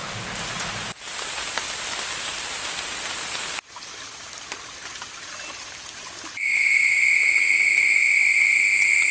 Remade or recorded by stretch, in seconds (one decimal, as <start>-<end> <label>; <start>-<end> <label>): 0.0-6.4 recorded; 6.4-7.2 remade; 7.2-9.1 recorded